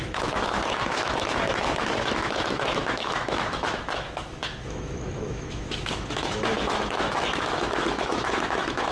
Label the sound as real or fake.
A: fake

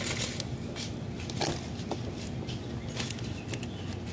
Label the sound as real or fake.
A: real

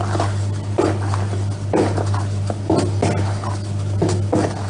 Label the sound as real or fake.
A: real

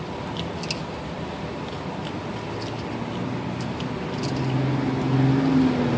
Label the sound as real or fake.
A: real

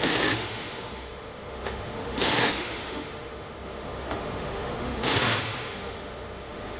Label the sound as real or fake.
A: fake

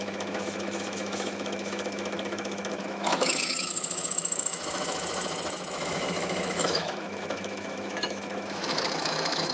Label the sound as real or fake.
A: fake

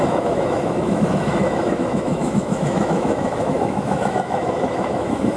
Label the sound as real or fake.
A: fake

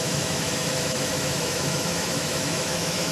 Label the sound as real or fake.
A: fake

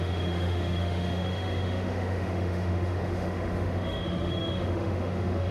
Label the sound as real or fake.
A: fake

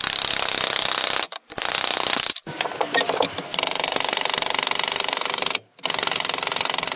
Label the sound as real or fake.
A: real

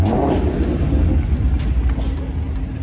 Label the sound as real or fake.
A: real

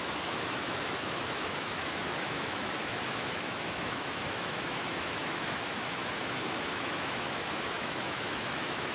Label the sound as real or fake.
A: fake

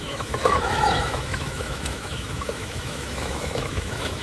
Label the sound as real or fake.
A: fake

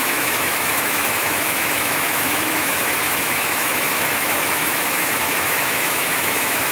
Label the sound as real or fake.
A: fake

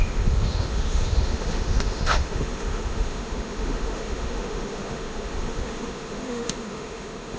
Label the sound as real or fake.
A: fake